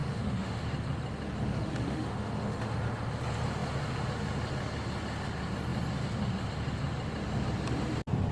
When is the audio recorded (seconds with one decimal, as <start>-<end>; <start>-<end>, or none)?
0.6-1.5; 2.8-8.3